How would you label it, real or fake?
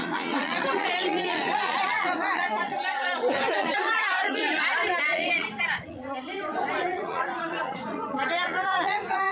fake